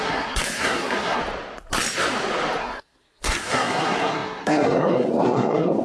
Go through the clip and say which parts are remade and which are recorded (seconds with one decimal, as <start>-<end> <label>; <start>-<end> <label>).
0.0-1.2 remade; 1.2-2.6 recorded; 2.6-5.8 remade

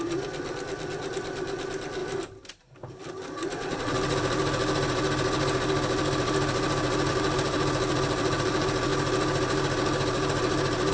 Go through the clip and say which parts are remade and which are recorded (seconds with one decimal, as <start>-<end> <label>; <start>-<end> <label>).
0.0-2.0 remade; 2.0-7.1 recorded; 7.1-8.9 remade; 8.9-10.9 recorded